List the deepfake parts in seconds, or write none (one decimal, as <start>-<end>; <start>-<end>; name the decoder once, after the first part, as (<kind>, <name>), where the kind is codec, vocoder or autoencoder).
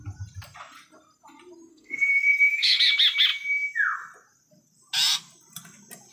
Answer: 1.7-2.8 (codec, SNAC)